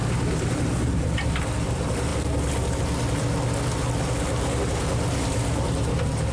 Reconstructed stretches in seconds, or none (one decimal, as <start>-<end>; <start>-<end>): 0.0-2.1; 4.7-6.3